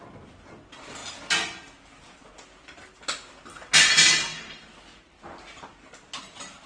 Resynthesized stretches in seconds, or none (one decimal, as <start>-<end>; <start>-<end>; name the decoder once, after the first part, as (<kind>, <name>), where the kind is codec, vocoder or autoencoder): none